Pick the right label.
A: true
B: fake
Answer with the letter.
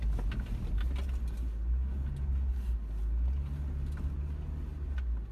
A